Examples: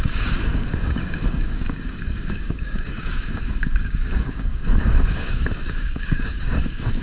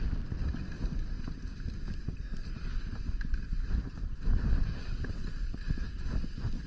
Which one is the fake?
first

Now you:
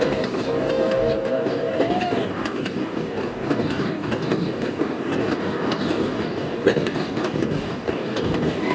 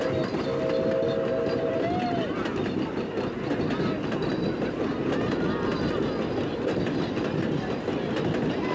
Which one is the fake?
first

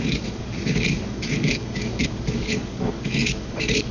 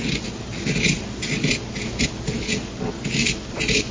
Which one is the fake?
first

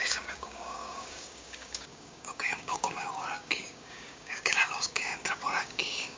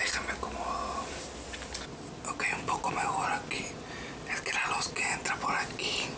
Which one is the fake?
first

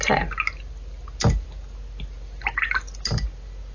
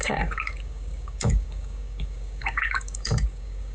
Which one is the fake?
second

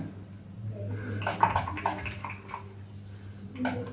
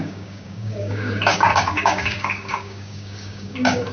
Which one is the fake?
second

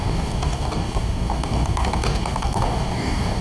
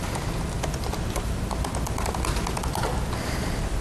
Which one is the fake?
first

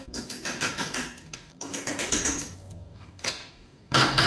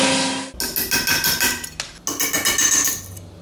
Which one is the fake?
first